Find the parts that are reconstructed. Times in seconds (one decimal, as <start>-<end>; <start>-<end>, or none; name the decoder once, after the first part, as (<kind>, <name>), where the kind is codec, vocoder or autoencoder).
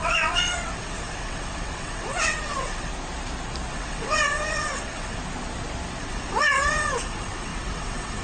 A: 0.0-2.9 (vocoder, WaveNeXt); 3.7-5.2; 6.0-8.2